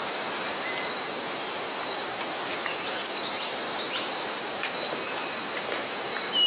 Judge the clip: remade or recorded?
recorded